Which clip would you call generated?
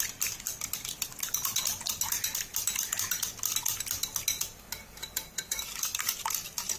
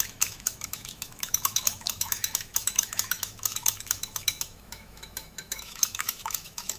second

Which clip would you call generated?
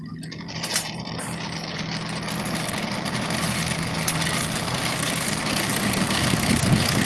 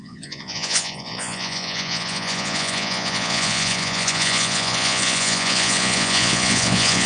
second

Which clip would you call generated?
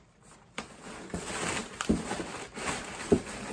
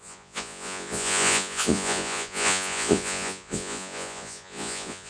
second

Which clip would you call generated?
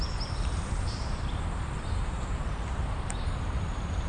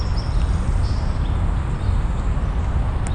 first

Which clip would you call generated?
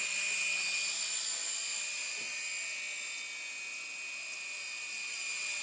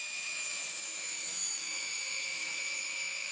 second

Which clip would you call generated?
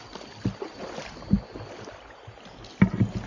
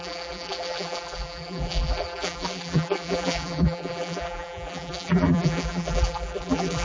second